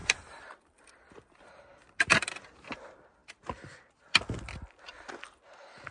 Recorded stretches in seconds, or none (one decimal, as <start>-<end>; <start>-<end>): none